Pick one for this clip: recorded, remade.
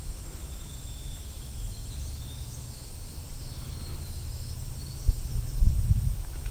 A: remade